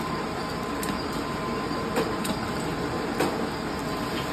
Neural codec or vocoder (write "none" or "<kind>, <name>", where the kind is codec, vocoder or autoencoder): none